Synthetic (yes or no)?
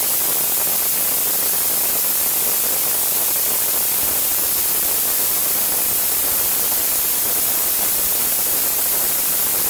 no